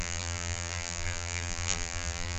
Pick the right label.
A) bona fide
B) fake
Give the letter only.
B